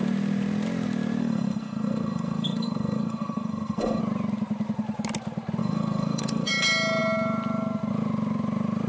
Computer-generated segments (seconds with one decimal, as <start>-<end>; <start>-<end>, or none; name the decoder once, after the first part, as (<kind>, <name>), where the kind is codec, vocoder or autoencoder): 1.2-4.0 (codec, SNAC); 5.6-6.5